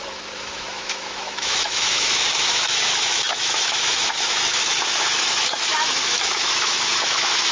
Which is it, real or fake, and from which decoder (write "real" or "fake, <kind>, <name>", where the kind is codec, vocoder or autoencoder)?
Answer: fake, autoencoder, DAC-VAE